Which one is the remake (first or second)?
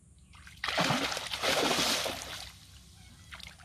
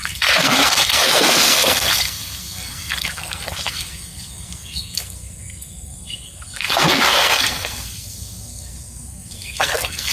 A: second